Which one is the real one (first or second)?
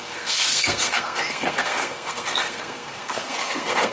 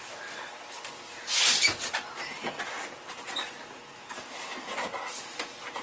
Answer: second